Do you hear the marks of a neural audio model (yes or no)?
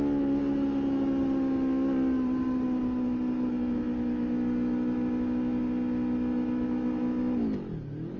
no